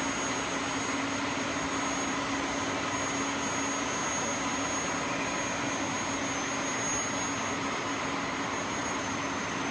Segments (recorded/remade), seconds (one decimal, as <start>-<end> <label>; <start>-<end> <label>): 0.0-8.8 recorded; 8.8-9.7 remade